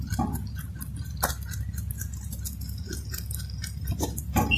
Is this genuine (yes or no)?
yes